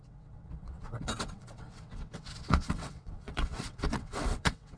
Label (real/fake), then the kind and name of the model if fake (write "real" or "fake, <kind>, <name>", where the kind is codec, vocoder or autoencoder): fake, vocoder, WaveNeXt